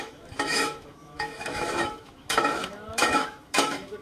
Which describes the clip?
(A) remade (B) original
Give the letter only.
A